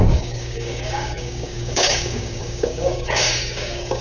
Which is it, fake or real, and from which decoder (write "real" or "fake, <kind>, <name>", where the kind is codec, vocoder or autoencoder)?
fake, codec, DAC